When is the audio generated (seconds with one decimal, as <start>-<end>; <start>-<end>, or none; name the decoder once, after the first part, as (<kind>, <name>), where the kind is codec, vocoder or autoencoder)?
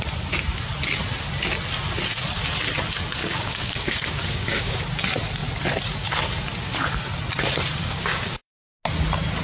3.2-4.8 (codec, DAC); 7.8-8.6